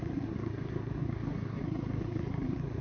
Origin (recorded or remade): remade